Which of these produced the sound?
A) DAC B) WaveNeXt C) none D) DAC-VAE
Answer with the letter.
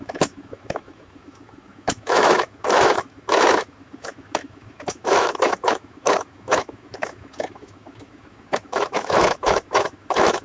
D